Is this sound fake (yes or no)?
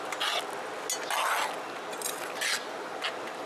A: no